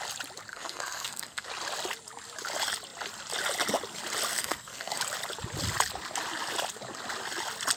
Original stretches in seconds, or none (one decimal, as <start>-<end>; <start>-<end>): 0.0-0.5; 1.5-4.3; 5.0-7.8